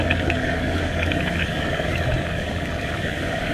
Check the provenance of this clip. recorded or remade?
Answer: remade